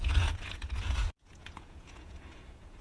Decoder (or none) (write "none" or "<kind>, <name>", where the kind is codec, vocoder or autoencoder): vocoder, Vocos